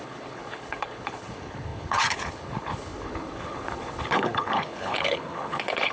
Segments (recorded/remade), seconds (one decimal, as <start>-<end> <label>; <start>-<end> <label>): 0.0-5.9 remade